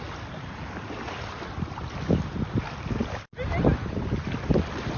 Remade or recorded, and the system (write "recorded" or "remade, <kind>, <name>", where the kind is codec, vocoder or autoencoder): recorded